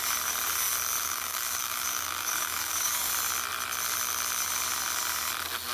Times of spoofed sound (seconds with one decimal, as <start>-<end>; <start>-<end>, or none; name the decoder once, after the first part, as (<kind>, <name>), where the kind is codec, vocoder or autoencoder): 1.0-3.1 (codec, DAC)